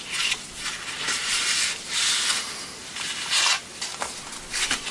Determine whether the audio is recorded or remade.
recorded